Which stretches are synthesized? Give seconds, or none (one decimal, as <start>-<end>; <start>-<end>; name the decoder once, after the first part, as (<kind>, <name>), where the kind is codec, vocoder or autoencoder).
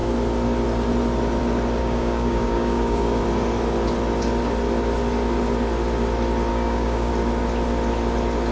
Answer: 1.8-3.2 (codec, DAC); 6.5-7.1